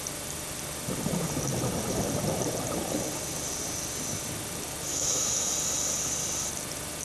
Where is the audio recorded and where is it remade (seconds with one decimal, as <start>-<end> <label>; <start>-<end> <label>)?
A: 0.0-4.9 recorded; 4.9-5.5 remade; 5.5-7.0 recorded